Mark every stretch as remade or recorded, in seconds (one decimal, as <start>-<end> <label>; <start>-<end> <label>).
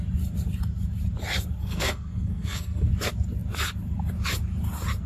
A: 0.0-1.6 recorded; 1.6-2.9 remade; 2.9-5.1 recorded